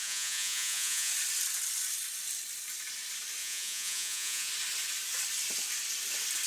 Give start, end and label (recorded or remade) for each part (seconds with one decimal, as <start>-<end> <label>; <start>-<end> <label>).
0.0-1.1 remade; 1.1-3.4 recorded; 3.4-4.5 remade; 4.5-6.5 recorded